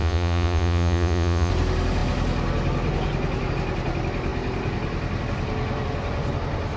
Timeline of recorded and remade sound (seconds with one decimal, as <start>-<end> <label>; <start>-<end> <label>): 0.0-1.5 remade; 1.5-6.8 recorded